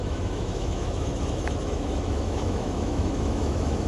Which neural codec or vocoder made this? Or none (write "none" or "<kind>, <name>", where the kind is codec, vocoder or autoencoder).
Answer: autoencoder, DAC-VAE